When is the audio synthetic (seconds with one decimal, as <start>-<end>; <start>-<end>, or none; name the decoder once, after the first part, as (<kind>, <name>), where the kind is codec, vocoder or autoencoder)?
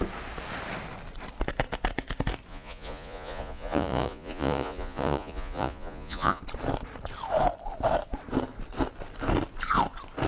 2.5-6.4 (vocoder, Vocos)